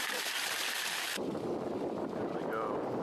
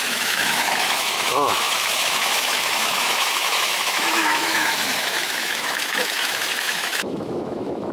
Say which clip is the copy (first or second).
second